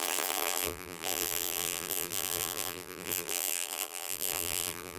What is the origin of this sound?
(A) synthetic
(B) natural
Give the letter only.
A